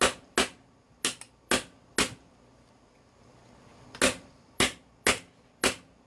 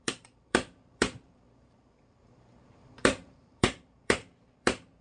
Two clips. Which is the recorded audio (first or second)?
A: first